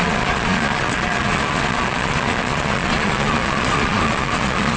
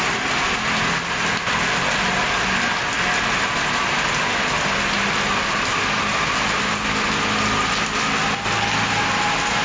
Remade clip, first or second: first